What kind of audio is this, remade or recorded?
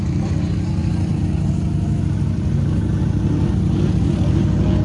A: recorded